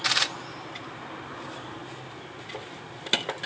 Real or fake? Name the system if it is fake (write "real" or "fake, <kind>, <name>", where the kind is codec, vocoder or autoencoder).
real